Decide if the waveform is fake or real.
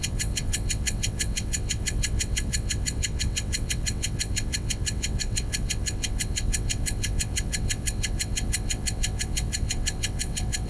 fake